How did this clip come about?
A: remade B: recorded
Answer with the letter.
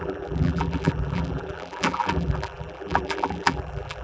A